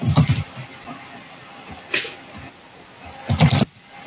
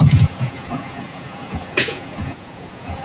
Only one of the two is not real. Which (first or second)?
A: second